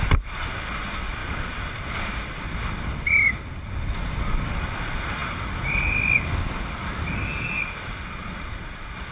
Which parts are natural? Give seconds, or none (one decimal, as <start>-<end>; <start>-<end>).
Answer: 0.0-9.1